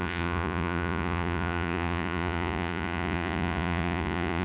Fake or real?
fake